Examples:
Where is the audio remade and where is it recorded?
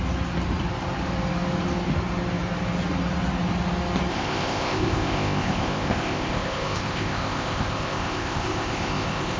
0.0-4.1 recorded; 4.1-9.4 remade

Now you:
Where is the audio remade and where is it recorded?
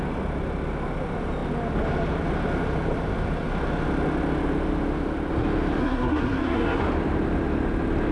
0.0-5.8 recorded; 5.8-6.8 remade; 6.8-8.1 recorded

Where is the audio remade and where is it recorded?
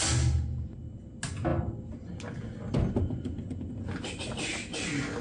0.0-5.2 recorded